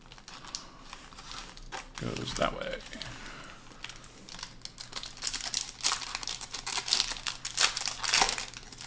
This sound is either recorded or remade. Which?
recorded